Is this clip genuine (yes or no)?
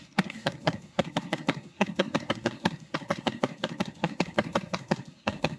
no